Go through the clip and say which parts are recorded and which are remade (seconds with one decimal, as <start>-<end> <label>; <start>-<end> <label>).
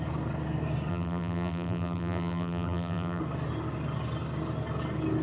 0.0-0.9 recorded; 0.9-3.2 remade; 3.2-5.2 recorded